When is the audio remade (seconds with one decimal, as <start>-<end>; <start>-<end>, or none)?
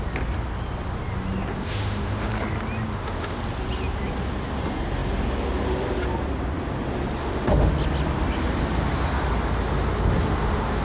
1.5-2.3; 2.9-3.4; 7.2-7.7